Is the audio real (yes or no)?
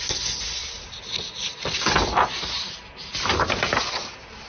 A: yes